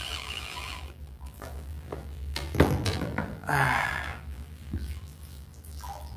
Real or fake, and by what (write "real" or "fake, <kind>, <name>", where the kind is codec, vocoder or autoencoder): fake, vocoder, BigVGAN v2